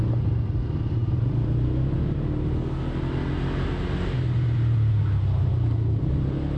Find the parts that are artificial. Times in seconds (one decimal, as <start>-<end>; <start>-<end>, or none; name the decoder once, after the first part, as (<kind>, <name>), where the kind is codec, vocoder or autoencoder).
none